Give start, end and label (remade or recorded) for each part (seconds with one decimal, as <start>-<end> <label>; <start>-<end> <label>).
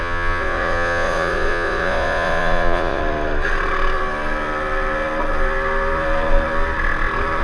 0.0-3.0 remade; 3.0-7.4 recorded